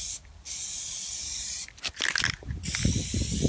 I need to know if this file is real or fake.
real